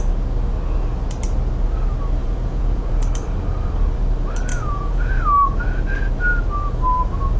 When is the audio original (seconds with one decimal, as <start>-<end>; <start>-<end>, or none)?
0.0-2.2; 2.9-4.5; 5.1-7.4